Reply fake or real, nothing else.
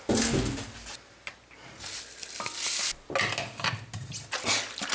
real